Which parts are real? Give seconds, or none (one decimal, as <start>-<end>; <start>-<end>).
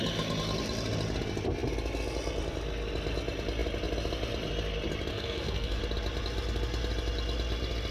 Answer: 0.0-5.1; 5.8-7.9